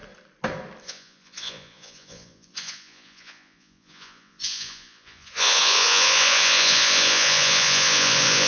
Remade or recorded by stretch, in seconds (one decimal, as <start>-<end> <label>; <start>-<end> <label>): 0.0-0.8 recorded; 0.8-8.5 remade